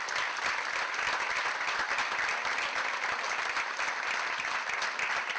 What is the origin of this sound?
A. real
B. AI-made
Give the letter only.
A